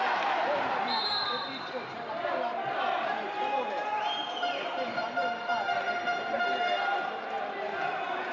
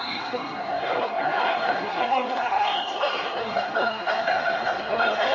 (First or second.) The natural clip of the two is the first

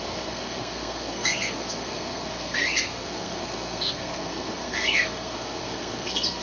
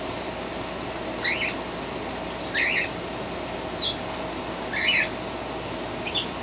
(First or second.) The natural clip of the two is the second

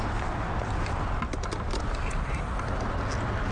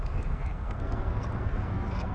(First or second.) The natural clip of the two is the first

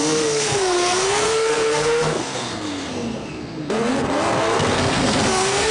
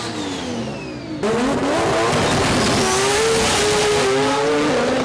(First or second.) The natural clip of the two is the second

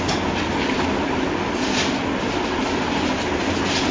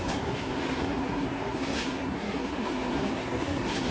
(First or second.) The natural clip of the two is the first